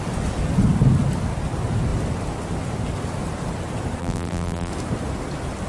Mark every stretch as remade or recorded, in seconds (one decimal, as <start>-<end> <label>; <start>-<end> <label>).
0.0-4.0 recorded; 4.0-4.7 remade; 4.7-5.7 recorded